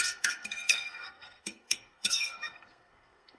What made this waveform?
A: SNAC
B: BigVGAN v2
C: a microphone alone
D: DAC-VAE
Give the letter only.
A